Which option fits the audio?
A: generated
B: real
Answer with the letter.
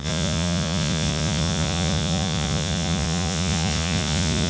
A